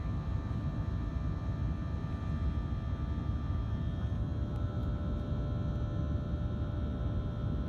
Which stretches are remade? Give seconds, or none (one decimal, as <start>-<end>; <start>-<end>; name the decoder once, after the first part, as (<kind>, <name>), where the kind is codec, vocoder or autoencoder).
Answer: none